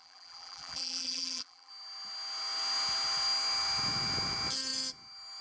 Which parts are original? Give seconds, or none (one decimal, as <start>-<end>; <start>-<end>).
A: 1.7-5.4